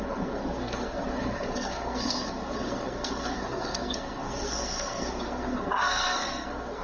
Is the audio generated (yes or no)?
yes